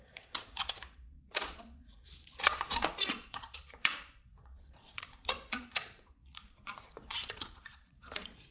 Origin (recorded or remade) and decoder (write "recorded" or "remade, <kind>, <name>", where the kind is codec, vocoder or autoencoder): remade, vocoder, Vocos